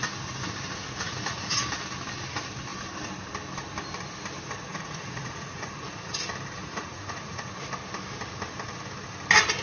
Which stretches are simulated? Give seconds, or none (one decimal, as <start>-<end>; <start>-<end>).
0.7-1.6; 4.7-6.1; 6.6-7.4